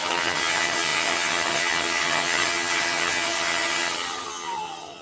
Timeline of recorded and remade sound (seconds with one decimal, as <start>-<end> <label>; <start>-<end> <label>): 0.0-5.0 remade